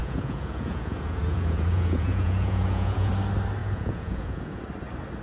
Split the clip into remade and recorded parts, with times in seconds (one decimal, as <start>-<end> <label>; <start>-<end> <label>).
0.0-3.1 remade; 3.1-3.6 recorded; 3.6-4.6 remade; 4.6-5.2 recorded